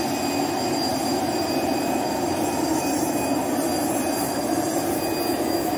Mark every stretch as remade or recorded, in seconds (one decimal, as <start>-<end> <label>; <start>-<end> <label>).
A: 0.0-0.9 recorded; 0.9-4.4 remade; 4.4-5.8 recorded